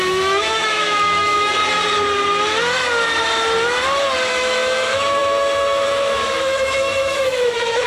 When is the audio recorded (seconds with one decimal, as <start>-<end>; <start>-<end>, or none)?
1.6-4.3